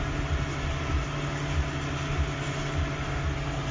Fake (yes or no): no